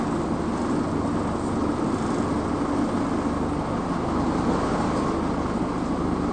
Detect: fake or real real